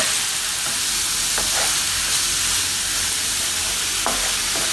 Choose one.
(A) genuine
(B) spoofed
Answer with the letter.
A